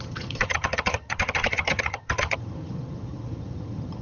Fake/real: fake